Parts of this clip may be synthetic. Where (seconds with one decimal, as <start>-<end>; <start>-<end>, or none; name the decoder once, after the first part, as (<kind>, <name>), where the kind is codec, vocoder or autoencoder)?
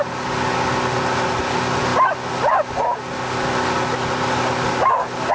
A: none